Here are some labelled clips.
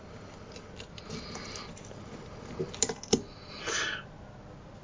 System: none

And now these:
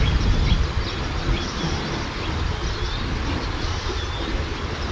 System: none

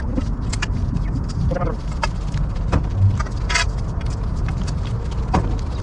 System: vocoder, BigVGAN v2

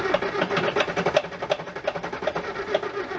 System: none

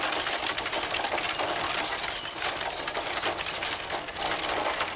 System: none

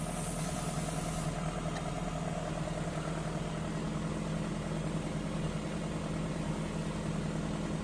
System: none